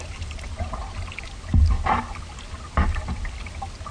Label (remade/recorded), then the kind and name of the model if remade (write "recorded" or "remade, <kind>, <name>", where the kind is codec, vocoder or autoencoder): recorded